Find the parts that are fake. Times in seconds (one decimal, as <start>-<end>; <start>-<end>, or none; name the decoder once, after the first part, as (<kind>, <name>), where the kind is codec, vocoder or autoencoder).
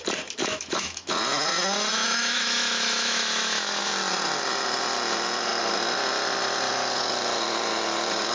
0.4-1.1 (autoencoder, DAC-VAE); 1.9-3.9